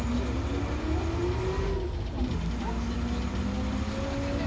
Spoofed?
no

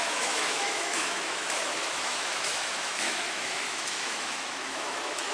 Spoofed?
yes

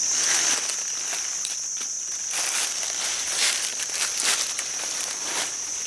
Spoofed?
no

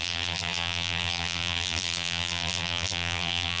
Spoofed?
yes